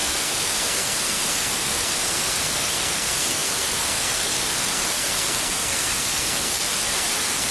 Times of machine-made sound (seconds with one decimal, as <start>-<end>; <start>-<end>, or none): 0.0-7.5

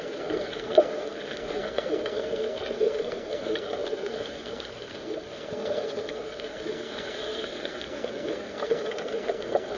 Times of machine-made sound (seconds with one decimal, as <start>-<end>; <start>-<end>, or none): 0.0-9.8

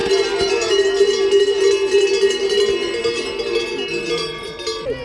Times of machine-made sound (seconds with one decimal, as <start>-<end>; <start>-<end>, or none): none

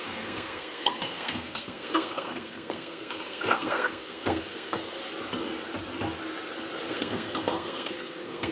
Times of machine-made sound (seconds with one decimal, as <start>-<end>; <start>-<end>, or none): 0.0-5.0; 6.9-8.5

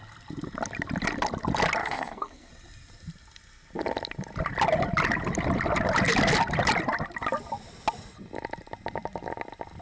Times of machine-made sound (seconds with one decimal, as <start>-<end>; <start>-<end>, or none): 1.8-2.5

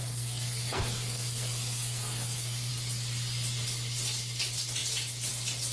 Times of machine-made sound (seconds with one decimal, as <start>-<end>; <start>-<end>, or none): 0.0-2.7

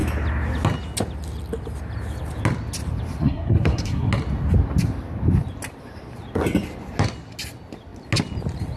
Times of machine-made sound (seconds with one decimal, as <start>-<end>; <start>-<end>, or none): 3.2-4.1

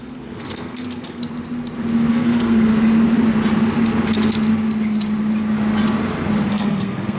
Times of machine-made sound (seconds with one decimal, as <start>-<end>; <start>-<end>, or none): 0.0-1.2; 2.1-2.7; 6.5-7.2